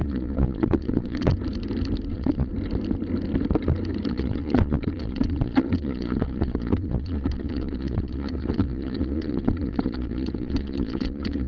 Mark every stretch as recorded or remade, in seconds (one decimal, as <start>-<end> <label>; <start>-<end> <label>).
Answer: 0.0-1.3 remade; 1.3-2.1 recorded; 2.1-2.5 remade; 2.5-4.1 recorded; 4.1-11.5 remade